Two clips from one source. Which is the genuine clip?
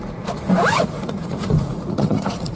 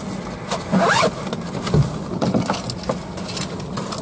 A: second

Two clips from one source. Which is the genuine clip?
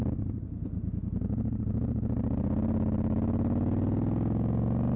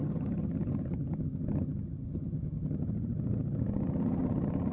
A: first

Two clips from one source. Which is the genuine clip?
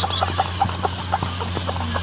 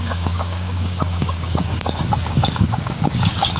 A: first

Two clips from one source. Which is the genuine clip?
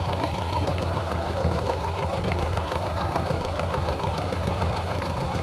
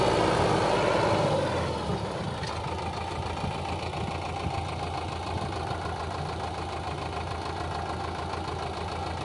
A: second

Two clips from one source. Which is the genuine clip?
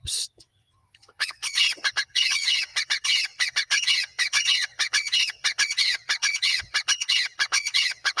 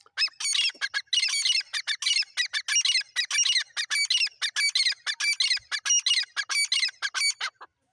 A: second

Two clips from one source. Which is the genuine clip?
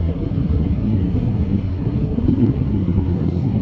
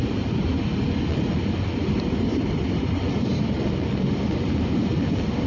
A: second